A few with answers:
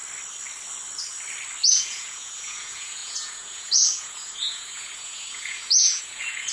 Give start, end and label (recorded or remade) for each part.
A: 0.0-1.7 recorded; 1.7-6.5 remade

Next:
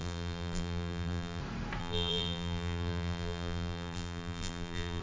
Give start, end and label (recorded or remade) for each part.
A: 0.0-1.4 remade; 1.4-1.8 recorded; 1.8-5.0 remade

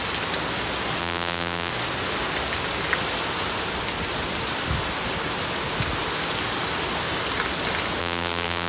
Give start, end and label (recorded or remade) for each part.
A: 0.0-1.0 recorded; 1.0-1.7 remade; 1.7-8.0 recorded; 8.0-8.7 remade